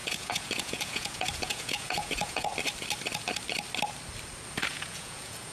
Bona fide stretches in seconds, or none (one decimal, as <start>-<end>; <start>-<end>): 2.5-4.7